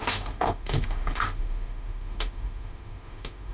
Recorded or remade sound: remade